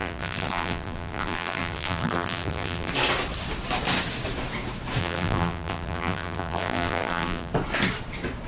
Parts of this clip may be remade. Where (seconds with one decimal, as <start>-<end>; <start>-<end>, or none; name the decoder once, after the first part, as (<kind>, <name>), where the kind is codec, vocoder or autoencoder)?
0.0-2.9 (vocoder, BigVGAN v2); 5.0-7.5